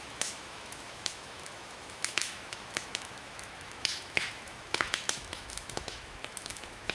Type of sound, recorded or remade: remade